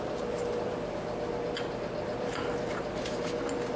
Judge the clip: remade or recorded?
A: remade